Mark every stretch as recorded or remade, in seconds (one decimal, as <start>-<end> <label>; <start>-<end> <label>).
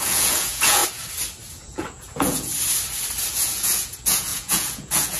0.0-0.8 remade; 0.8-1.5 recorded; 1.5-2.5 remade; 2.5-3.3 recorded; 3.3-5.2 remade